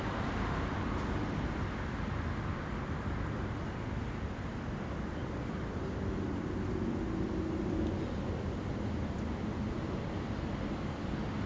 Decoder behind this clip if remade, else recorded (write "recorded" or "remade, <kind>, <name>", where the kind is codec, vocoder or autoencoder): recorded